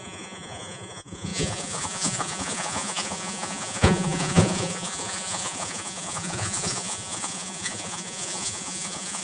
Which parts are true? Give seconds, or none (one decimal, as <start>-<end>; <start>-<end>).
none